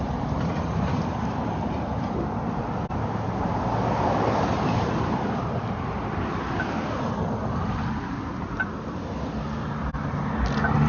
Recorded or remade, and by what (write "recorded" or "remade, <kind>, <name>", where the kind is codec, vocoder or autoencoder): recorded